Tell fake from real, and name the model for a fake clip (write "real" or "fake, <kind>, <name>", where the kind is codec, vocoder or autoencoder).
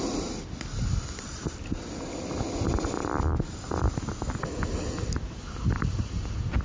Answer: real